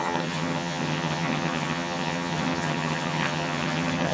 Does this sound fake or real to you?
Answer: fake